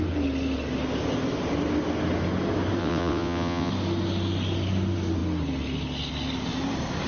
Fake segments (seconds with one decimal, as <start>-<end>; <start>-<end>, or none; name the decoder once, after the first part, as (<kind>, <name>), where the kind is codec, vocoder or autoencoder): 2.8-3.7 (vocoder, WaveNeXt)